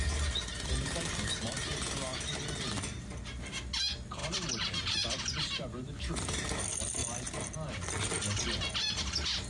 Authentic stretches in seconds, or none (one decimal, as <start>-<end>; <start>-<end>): 0.0-4.2; 6.1-9.5